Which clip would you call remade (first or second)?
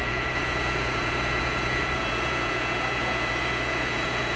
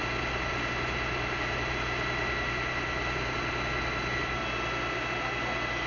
first